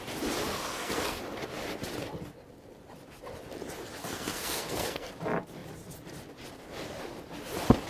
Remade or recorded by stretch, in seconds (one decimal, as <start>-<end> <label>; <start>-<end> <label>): 0.0-0.5 recorded; 0.5-1.2 remade; 1.2-4.0 recorded; 4.0-5.1 remade; 5.1-7.9 recorded